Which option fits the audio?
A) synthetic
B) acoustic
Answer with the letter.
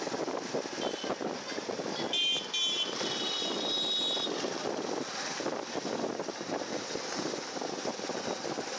B